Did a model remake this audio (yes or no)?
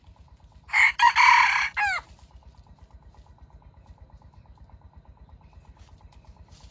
no